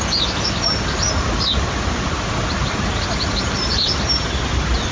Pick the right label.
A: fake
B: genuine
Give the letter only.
B